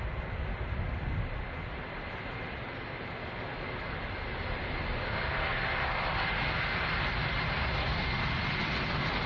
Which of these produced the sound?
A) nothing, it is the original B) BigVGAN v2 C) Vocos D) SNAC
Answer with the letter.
A